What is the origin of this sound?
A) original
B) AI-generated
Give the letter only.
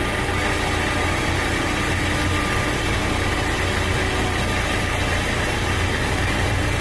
A